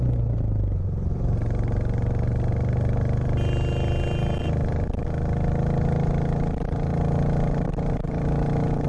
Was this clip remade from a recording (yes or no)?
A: no